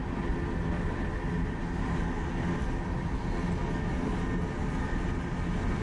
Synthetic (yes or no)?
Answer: no